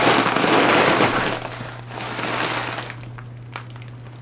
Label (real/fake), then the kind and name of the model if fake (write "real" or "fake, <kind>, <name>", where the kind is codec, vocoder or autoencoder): real